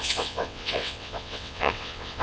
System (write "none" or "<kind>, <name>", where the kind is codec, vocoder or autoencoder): vocoder, WaveNeXt